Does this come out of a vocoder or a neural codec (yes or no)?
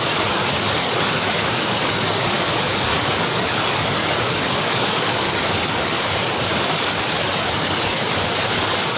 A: yes